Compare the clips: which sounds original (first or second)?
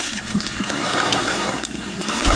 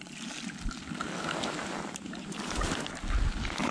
second